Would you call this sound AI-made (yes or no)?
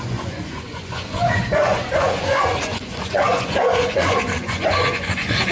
yes